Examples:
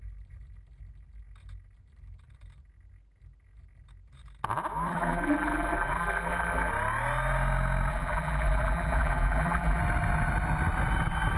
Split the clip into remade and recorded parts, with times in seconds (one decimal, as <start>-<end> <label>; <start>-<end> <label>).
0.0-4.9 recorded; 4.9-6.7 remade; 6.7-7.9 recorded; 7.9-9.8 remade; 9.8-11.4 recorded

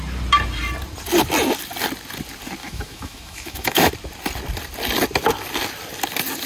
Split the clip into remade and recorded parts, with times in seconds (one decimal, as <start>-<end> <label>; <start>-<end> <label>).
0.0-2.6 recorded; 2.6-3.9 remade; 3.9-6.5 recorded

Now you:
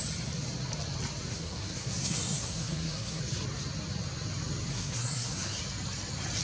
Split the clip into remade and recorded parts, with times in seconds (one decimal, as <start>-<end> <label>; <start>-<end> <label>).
0.0-1.3 recorded; 1.3-3.2 remade; 3.2-4.7 recorded; 4.7-5.6 remade; 5.6-6.4 recorded

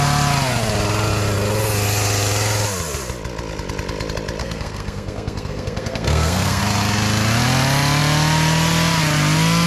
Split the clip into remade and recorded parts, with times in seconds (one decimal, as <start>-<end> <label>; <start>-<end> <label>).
0.0-4.4 recorded; 4.4-6.6 remade; 6.6-9.7 recorded

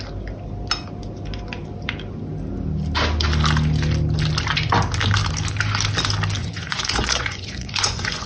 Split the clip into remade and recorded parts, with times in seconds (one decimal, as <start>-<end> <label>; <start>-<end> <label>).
0.0-6.4 recorded; 6.4-8.3 remade